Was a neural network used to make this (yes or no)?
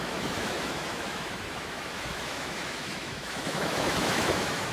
yes